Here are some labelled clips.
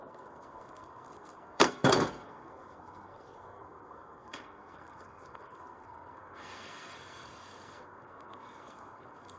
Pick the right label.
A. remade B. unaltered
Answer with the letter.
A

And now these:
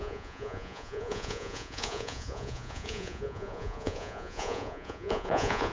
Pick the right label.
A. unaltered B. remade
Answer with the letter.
B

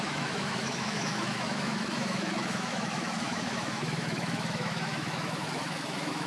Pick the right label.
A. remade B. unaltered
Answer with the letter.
A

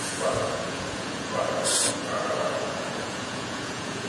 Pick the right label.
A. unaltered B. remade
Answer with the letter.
B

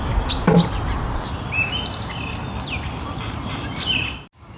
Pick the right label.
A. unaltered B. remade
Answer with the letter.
A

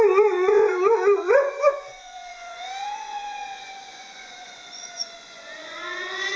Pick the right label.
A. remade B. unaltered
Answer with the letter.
A